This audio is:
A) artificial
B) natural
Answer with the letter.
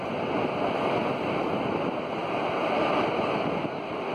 B